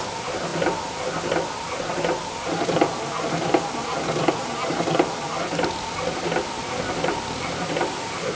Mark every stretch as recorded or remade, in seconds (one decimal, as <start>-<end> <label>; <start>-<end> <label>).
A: 0.0-8.3 recorded